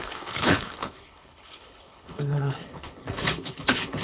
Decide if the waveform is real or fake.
fake